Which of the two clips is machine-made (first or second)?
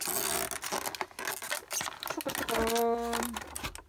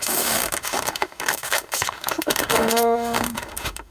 second